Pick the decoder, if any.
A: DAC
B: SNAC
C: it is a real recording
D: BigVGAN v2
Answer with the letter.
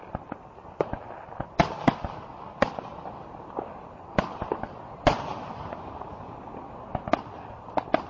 C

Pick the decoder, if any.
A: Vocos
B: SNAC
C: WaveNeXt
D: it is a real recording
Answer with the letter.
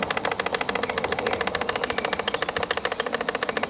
D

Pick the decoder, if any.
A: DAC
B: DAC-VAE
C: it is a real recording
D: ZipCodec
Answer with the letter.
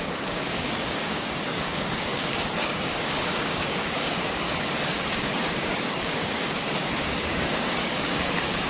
A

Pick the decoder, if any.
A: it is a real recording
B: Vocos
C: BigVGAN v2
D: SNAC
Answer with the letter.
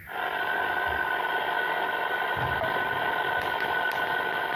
A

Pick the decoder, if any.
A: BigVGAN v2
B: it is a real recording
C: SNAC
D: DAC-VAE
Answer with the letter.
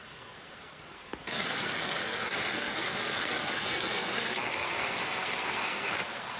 C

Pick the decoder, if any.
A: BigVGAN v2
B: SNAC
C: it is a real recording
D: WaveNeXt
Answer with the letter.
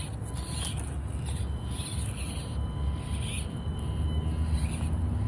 C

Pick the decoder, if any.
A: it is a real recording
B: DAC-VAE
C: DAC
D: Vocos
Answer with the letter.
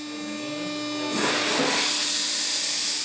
A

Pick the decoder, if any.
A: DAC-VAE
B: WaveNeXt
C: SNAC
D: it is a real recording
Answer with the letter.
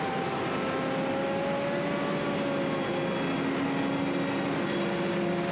D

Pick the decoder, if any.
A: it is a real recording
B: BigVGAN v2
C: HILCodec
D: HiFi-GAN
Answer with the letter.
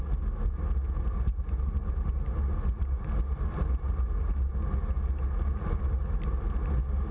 A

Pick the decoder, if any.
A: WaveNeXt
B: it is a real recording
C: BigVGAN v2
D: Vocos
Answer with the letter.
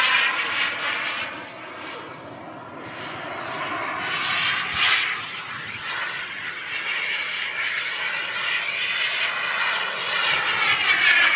B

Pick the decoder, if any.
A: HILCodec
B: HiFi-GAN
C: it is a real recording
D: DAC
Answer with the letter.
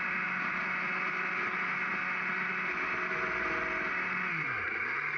C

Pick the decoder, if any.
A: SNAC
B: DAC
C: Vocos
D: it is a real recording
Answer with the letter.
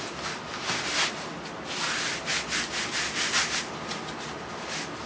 D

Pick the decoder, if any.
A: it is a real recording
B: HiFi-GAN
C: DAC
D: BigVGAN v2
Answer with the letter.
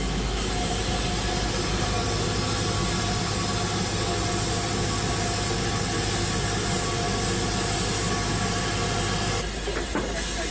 A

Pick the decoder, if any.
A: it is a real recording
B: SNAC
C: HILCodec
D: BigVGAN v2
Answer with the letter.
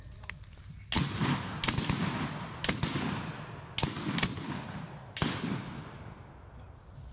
A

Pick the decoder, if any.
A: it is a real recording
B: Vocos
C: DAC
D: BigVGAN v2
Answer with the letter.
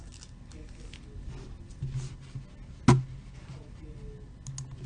A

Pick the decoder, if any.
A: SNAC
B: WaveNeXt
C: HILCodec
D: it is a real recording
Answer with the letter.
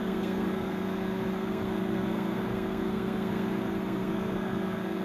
A